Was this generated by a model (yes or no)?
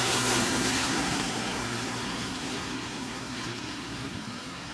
yes